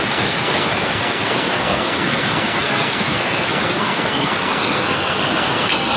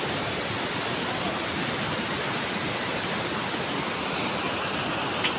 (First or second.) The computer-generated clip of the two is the first